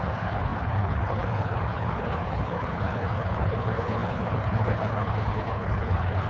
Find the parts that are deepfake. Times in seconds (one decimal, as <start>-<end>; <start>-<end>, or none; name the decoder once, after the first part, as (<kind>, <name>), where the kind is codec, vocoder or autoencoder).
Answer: 0.0-6.3 (codec, HILCodec)